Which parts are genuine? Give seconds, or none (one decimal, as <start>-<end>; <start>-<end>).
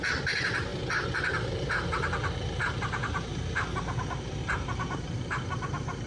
none